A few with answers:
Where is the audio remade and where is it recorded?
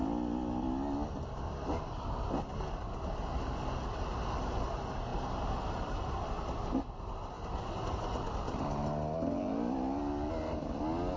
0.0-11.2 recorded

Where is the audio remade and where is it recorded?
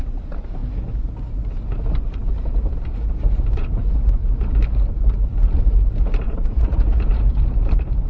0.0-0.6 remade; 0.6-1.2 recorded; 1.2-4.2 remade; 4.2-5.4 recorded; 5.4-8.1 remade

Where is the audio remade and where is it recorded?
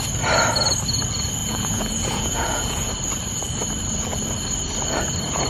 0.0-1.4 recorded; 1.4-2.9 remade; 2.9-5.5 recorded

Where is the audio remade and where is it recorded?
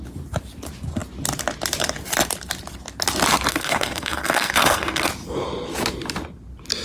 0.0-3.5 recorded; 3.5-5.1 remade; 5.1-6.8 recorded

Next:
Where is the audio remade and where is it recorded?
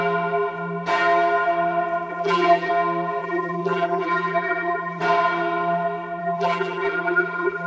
0.0-2.1 recorded; 2.1-2.7 remade; 2.7-3.2 recorded; 3.2-5.0 remade; 5.0-6.2 recorded; 6.2-7.7 remade